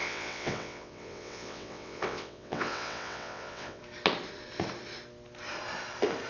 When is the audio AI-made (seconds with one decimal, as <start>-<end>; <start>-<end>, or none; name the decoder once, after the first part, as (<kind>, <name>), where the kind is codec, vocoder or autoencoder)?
0.0-3.8 (vocoder, WaveNeXt)